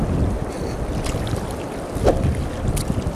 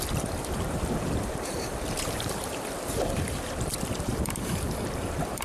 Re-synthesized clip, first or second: second